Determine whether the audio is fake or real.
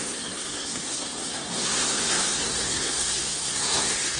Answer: fake